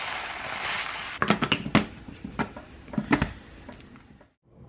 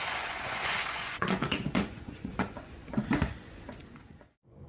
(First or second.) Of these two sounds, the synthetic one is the second